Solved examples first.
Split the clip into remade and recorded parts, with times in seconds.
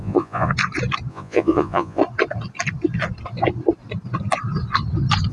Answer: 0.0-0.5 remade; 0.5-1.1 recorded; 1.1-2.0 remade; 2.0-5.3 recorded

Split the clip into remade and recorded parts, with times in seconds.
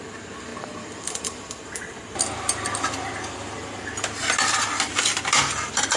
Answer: 0.0-6.0 recorded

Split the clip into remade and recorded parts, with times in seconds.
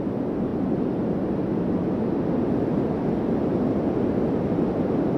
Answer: 0.0-5.2 recorded